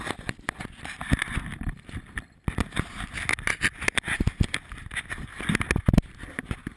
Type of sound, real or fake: real